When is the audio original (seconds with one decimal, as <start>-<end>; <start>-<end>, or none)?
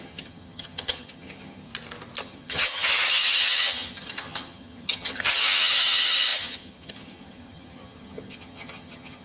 1.7-2.2